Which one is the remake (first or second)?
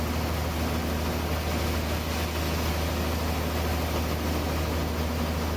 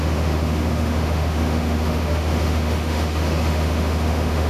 second